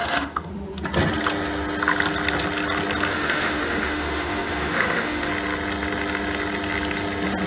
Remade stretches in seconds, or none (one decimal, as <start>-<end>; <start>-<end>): 0.0-0.5; 3.1-5.3

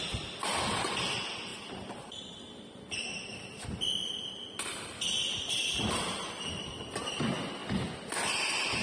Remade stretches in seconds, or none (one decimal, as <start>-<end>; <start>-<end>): 0.0-1.5; 2.0-7.6; 8.3-8.8